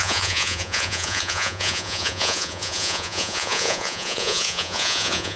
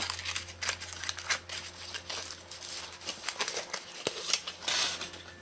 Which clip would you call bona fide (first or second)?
second